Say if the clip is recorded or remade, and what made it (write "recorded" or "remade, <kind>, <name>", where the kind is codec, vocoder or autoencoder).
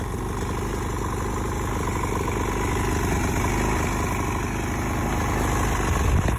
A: recorded